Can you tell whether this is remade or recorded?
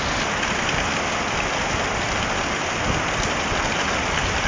recorded